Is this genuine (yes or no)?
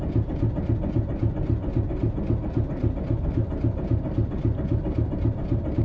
yes